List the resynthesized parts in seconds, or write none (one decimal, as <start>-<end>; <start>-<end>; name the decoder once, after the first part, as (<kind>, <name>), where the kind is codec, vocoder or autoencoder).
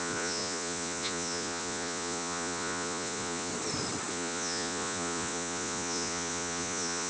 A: 0.0-3.5 (vocoder, Vocos); 4.1-7.1